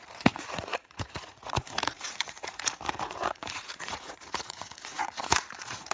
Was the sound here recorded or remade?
remade